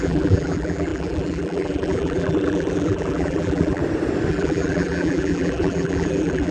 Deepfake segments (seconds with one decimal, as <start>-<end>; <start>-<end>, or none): 0.0-3.8; 4.3-6.5